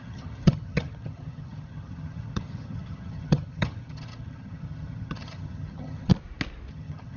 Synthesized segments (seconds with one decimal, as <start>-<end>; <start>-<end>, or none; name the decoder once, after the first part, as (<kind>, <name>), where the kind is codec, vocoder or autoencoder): 0.0-6.1 (vocoder, HiFi-GAN); 6.7-7.2